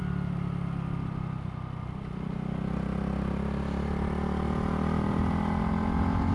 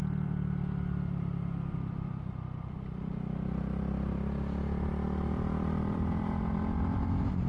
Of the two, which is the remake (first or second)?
second